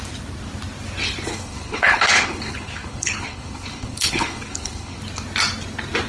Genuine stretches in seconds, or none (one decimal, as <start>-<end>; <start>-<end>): 0.0-1.3; 5.0-6.1